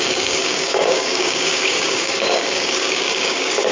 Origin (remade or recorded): remade